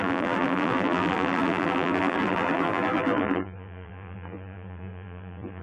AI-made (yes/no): yes